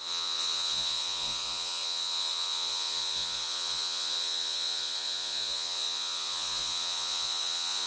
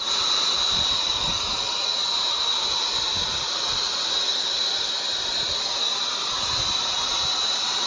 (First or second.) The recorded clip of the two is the second